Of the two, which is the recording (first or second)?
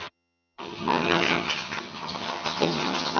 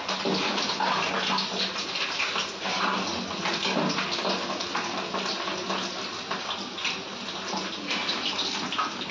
second